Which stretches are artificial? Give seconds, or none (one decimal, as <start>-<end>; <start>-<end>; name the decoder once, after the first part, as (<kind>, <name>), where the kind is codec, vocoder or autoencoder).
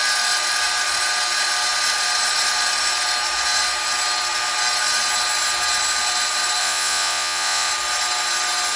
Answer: 6.6-7.7 (vocoder, Vocos)